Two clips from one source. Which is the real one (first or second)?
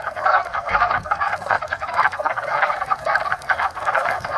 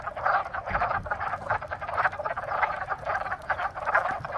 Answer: second